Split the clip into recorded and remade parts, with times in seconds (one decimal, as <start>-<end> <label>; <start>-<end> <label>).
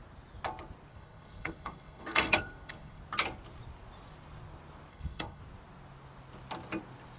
0.0-0.9 recorded; 0.9-3.0 remade; 3.0-4.9 recorded; 4.9-5.4 remade; 5.4-7.2 recorded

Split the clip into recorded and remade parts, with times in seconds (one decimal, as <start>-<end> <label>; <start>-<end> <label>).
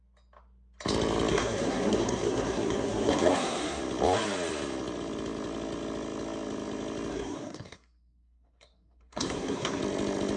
0.0-1.3 recorded; 1.3-3.8 remade; 3.8-7.1 recorded; 7.1-9.8 remade; 9.8-10.4 recorded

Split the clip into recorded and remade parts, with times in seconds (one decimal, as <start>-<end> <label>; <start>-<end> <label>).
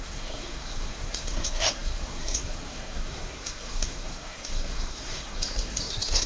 0.0-6.3 remade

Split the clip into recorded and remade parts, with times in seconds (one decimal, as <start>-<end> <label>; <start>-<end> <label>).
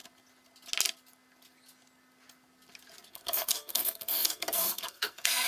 0.0-3.1 recorded; 3.1-5.5 remade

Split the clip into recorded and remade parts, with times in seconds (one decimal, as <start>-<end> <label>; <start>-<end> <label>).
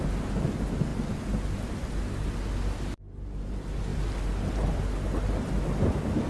0.0-6.3 recorded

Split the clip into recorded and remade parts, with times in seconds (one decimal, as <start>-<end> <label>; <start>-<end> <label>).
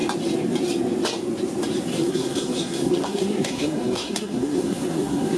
0.0-1.9 recorded; 1.9-5.4 remade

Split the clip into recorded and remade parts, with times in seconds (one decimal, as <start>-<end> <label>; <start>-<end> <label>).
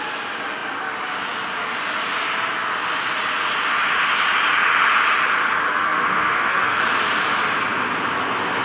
0.0-5.7 recorded; 5.7-6.8 remade; 6.8-8.6 recorded